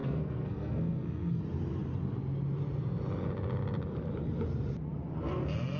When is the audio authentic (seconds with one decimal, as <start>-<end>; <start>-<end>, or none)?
1.4-5.8